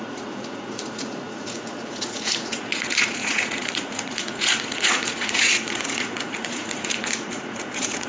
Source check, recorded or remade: remade